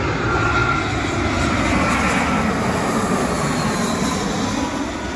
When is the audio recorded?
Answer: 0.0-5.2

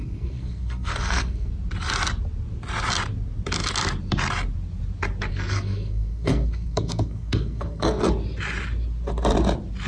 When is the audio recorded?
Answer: 1.5-5.3; 8.1-9.9

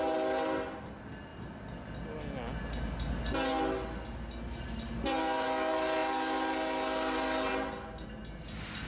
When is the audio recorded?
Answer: 0.0-8.9

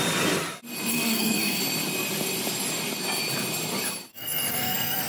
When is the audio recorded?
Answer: 0.0-0.9; 1.6-4.1

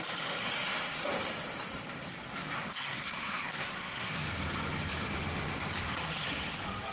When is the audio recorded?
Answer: 0.0-2.7; 4.1-6.9

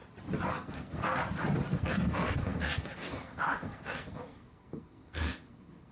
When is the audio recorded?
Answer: 0.0-0.5; 1.2-1.7

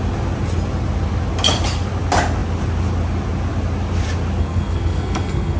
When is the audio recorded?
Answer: 0.0-4.4

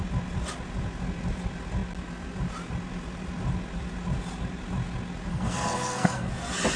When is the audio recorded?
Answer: 0.0-5.3; 6.3-6.8